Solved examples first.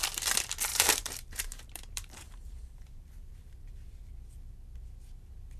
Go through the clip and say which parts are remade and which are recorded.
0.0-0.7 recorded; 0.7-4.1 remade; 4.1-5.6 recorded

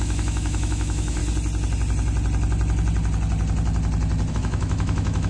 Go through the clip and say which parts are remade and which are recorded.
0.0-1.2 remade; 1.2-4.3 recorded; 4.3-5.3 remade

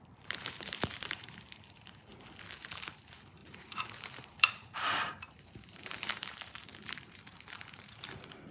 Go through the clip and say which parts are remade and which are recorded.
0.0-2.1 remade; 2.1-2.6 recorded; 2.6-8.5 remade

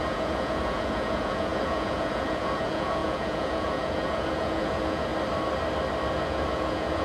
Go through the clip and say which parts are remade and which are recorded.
0.0-5.1 remade; 5.1-6.1 recorded; 6.1-7.0 remade